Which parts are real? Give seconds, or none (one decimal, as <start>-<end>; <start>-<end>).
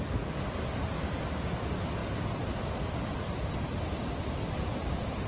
0.0-5.3